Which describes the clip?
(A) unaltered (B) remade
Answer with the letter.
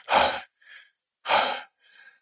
A